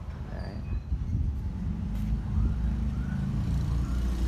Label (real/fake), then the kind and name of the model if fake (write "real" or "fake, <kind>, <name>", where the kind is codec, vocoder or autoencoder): real